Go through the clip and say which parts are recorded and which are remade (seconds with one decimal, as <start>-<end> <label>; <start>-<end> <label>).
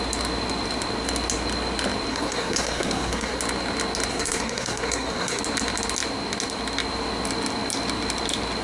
0.0-2.1 recorded; 2.1-3.4 remade; 3.4-4.1 recorded; 4.1-5.4 remade; 5.4-8.6 recorded